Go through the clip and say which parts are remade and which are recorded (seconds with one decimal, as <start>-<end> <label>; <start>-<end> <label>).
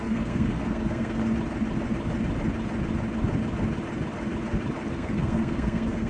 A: 0.0-1.2 remade; 1.2-4.9 recorded; 4.9-6.1 remade